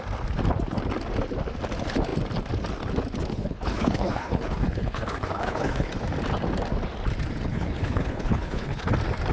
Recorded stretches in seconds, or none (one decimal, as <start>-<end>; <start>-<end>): 0.0-3.3; 5.9-7.5; 8.9-9.3